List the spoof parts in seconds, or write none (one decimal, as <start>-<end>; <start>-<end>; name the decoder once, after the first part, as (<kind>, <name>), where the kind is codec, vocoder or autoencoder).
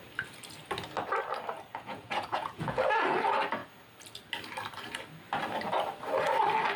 1.7-2.8 (vocoder, Vocos)